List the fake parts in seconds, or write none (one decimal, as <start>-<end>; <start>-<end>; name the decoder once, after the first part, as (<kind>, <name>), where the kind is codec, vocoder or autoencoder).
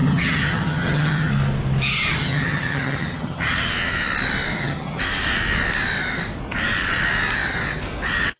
0.0-1.3 (vocoder, HiFi-GAN); 2.2-3.7; 4.5-5.0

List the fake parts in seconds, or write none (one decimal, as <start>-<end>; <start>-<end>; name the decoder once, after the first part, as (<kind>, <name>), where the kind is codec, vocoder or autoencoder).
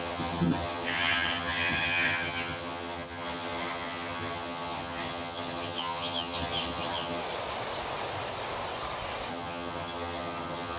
0.0-7.2 (vocoder, HiFi-GAN); 9.3-10.8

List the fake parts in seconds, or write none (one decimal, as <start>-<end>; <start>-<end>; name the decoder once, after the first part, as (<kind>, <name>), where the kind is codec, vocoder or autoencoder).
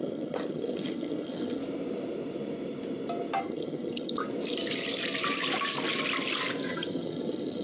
0.0-1.6 (vocoder, HiFi-GAN); 3.4-4.2; 6.7-7.6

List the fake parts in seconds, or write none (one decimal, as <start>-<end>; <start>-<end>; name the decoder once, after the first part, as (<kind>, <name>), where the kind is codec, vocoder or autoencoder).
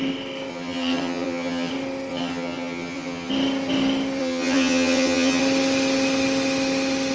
0.5-1.7 (vocoder, HiFi-GAN); 2.1-3.3; 4.2-5.4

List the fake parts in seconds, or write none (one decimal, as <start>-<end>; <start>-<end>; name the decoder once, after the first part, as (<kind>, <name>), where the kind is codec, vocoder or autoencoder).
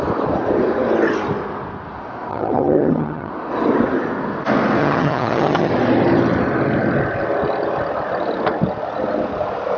2.3-3.3 (vocoder, HiFi-GAN); 4.8-5.7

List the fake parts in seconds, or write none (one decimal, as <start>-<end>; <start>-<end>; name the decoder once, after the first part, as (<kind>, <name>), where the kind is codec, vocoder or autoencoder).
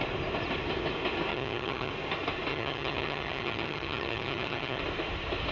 1.3-1.9 (vocoder, HiFi-GAN); 2.5-4.8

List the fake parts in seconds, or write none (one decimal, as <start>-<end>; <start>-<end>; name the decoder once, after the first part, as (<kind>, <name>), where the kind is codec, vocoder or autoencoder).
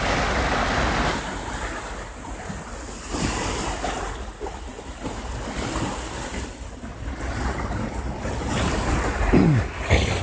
none